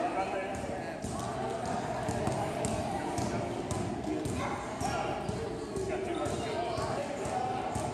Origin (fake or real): real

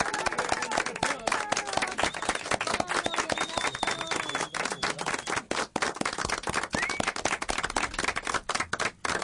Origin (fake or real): real